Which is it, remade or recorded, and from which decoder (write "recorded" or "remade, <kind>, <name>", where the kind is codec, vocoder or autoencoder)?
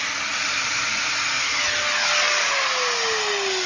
recorded